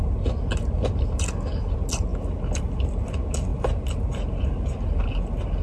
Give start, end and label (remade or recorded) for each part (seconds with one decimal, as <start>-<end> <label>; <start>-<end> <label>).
0.0-5.6 recorded